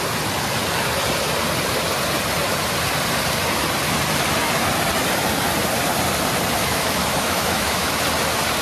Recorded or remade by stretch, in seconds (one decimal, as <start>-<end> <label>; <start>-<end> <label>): 0.0-6.6 recorded; 6.6-8.0 remade; 8.0-8.6 recorded